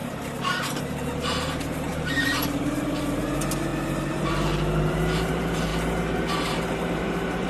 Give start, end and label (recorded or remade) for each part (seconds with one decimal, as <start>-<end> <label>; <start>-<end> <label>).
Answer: 0.0-5.7 remade; 5.7-6.3 recorded; 6.3-7.5 remade